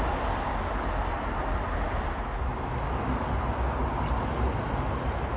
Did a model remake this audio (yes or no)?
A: no